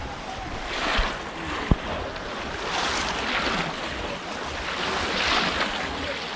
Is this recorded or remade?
recorded